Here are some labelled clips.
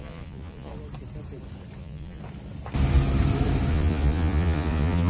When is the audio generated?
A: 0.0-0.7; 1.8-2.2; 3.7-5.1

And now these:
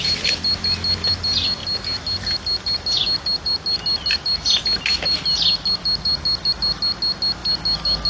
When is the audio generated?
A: none

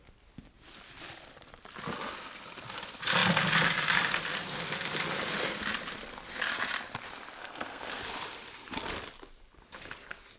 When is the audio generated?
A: 7.4-8.0

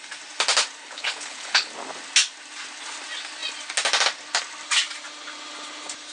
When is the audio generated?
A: 0.8-1.7

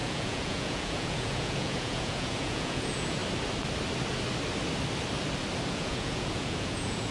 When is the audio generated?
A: 0.0-3.2; 5.7-7.1

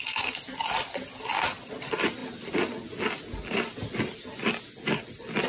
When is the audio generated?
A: none

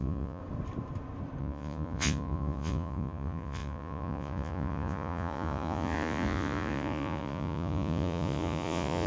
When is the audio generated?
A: 0.0-0.4; 1.4-9.1

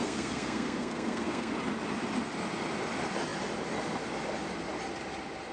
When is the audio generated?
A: 0.0-1.5